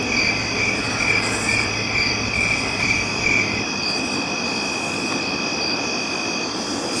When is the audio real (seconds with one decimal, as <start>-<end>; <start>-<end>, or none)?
0.0-1.5; 5.7-7.0